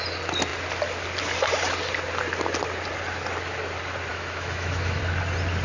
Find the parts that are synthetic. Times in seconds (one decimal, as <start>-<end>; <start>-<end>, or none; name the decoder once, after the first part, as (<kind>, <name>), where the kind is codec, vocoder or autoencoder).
4.1-5.0 (autoencoder, DAC-VAE)

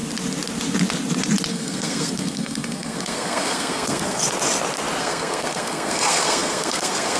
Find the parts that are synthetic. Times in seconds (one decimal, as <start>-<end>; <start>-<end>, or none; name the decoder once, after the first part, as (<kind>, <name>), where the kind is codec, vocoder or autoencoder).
1.5-4.2 (codec, SNAC); 5.0-7.2

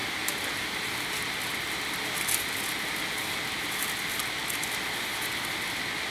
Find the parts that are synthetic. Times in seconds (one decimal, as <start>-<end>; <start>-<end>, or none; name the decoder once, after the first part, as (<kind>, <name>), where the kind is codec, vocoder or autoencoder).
none

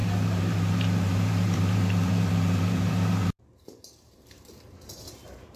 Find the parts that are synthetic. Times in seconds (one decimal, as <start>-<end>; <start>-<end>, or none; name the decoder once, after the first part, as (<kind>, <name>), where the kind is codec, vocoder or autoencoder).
0.0-5.6 (vocoder, BigVGAN v2)

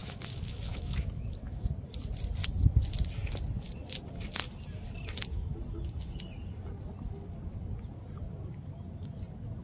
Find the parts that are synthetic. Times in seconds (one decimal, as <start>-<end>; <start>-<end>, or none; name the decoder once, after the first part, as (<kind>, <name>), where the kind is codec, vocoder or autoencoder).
0.0-1.7 (autoencoder, DAC-VAE)

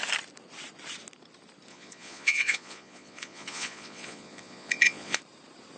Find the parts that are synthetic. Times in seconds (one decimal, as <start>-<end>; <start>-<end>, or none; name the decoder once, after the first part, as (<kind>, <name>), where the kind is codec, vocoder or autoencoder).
1.7-5.2 (vocoder, Vocos)